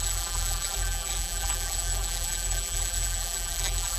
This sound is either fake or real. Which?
fake